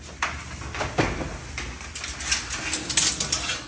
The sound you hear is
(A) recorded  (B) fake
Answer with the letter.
A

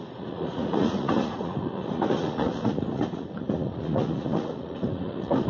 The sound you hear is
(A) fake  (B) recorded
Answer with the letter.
A